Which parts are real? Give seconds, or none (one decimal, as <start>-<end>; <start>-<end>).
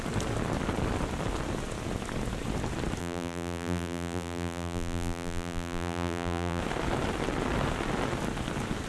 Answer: 0.0-3.0; 6.6-8.9